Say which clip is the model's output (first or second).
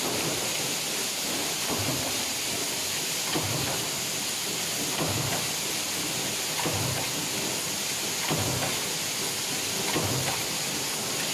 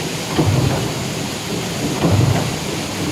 second